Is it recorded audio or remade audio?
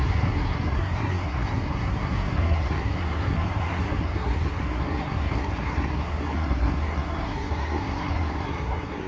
remade